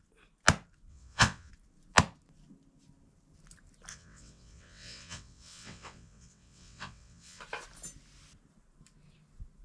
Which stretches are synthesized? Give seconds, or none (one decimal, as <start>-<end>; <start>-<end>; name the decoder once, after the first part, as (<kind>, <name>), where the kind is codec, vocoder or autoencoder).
0.9-1.5 (vocoder, WaveNeXt); 3.9-7.4